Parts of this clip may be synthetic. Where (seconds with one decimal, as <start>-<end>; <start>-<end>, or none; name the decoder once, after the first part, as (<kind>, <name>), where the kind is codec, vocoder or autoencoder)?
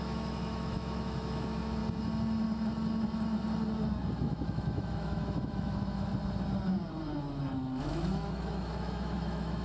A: 0.0-1.8 (autoencoder, DAC-VAE); 4.2-6.1; 7.8-9.6